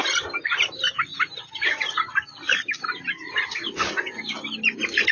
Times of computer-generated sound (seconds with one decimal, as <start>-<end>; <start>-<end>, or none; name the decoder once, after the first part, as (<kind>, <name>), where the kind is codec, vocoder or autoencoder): 1.1-4.2 (vocoder, BigVGAN v2)